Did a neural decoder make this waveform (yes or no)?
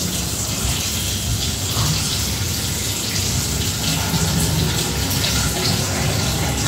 no